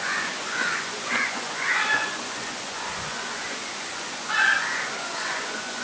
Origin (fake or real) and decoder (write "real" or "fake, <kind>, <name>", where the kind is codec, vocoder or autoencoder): fake, vocoder, Vocos